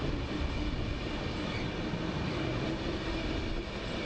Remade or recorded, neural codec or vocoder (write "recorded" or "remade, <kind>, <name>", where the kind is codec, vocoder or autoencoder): recorded